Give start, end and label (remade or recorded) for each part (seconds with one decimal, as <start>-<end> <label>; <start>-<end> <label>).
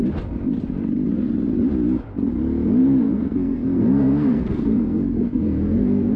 0.0-2.8 recorded; 2.8-6.2 remade